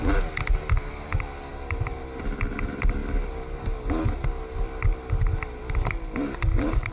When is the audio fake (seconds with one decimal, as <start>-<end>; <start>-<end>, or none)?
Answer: none